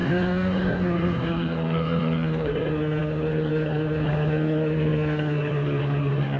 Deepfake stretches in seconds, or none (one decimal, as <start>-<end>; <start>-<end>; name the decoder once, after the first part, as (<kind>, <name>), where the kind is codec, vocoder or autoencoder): 0.0-6.4 (codec, SNAC)